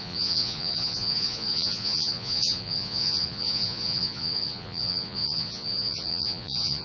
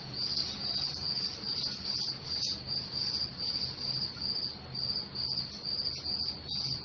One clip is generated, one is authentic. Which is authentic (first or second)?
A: second